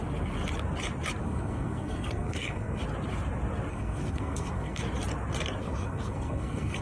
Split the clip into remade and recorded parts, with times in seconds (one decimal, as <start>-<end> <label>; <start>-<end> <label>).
0.0-1.2 recorded; 1.2-2.8 remade; 2.8-3.7 recorded; 3.7-4.8 remade; 4.8-5.6 recorded; 5.6-6.8 remade